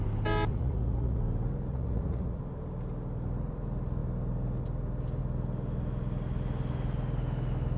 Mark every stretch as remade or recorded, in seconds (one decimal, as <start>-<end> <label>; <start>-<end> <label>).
0.0-0.5 recorded; 0.5-1.2 remade; 1.2-1.7 recorded; 1.7-2.4 remade; 2.4-7.8 recorded